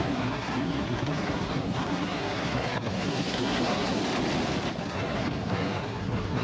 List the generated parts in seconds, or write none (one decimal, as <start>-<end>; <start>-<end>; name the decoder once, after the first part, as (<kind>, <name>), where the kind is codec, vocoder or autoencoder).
0.0-4.0 (codec, SNAC); 4.8-6.4